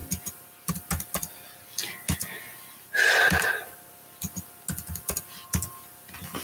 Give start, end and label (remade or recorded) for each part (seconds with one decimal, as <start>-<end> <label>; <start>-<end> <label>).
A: 0.0-6.4 recorded